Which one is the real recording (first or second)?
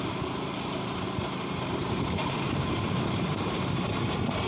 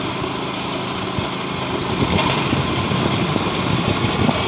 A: second